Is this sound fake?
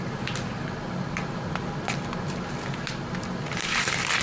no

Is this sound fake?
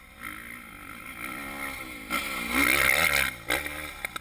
no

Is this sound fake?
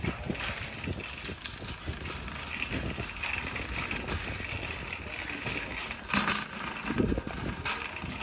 no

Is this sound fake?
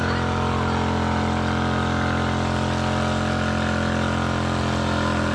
no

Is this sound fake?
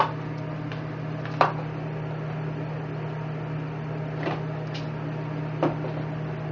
no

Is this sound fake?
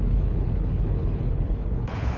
yes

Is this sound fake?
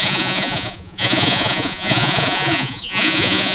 yes